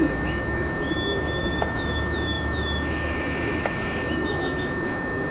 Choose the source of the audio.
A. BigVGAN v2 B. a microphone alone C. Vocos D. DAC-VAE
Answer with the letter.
D